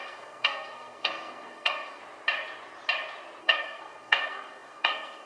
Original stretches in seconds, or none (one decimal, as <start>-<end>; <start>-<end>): 2.0-3.4